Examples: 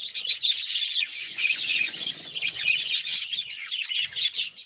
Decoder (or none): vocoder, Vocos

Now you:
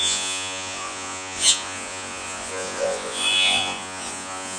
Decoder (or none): vocoder, Vocos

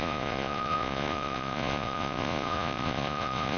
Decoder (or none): vocoder, Vocos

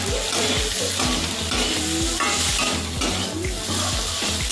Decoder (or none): none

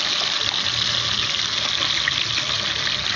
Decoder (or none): none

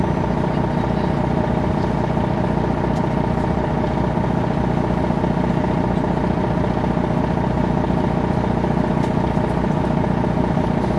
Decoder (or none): none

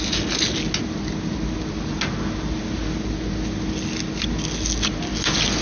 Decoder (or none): none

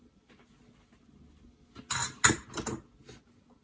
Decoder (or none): none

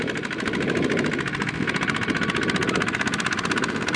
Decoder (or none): none